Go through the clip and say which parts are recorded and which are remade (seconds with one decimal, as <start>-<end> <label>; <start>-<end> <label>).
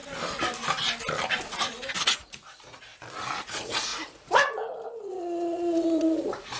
0.0-2.0 recorded; 2.0-2.9 remade; 2.9-3.4 recorded; 3.4-6.6 remade